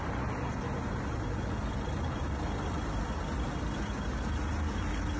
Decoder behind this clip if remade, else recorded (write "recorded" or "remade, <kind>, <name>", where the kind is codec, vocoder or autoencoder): recorded